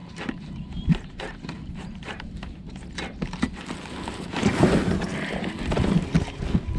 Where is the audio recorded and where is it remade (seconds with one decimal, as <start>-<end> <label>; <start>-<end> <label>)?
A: 0.0-2.9 remade; 2.9-6.8 recorded